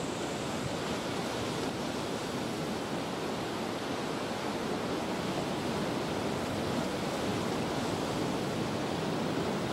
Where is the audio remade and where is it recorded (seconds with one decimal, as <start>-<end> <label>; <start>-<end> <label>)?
0.0-9.7 recorded